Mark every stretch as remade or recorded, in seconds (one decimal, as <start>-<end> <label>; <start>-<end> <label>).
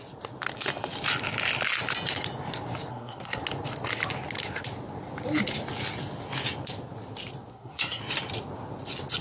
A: 0.0-2.9 recorded; 2.9-3.4 remade; 3.4-7.5 recorded; 7.5-8.0 remade; 8.0-9.2 recorded